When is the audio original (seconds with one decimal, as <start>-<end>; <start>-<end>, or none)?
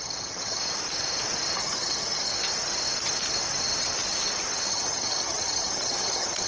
0.6-1.6; 2.3-4.7